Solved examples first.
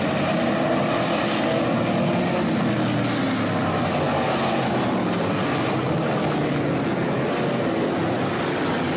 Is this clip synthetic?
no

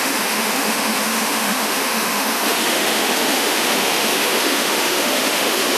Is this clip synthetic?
yes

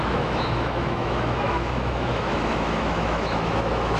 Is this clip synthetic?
yes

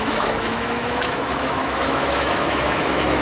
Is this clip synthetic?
yes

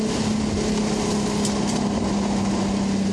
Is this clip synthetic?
no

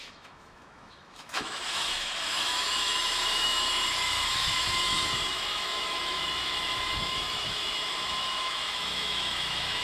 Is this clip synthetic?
yes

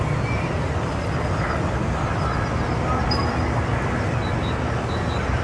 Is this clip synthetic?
no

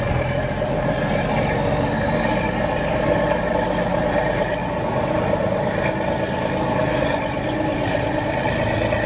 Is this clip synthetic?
no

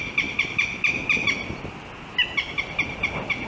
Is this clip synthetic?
no